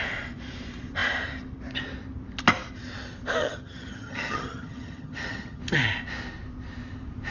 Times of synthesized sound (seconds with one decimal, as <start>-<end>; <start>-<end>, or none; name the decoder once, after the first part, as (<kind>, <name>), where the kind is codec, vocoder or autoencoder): 3.4-5.6 (vocoder, HiFi-GAN)

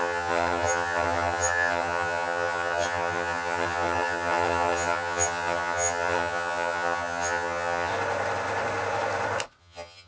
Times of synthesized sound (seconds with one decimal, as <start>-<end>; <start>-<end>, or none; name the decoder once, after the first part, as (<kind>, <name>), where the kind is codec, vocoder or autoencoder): 0.0-7.9 (vocoder, HiFi-GAN); 9.6-10.1

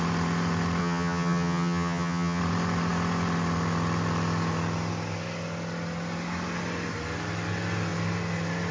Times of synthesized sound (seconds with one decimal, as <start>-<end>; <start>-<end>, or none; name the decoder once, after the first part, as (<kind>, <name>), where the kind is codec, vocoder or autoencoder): 0.8-2.4 (vocoder, HiFi-GAN)

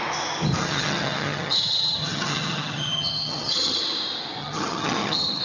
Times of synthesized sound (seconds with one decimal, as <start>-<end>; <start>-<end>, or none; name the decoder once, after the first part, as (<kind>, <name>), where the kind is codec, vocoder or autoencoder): 0.6-3.8 (vocoder, HiFi-GAN); 4.4-5.4

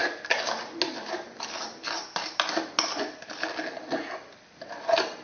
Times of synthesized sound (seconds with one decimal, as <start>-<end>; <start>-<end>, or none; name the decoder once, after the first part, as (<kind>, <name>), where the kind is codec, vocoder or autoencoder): none